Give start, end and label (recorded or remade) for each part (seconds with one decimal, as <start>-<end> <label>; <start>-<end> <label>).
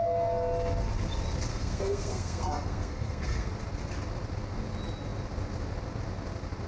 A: 0.0-1.5 recorded; 1.5-3.5 remade; 3.5-6.7 recorded